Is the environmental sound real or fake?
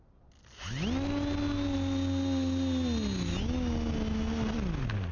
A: real